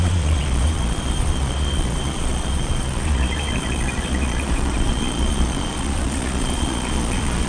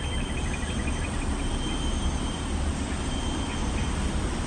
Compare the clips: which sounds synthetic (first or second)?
first